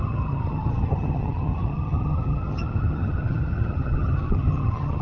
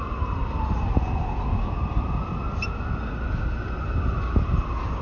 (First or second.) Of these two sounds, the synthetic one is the first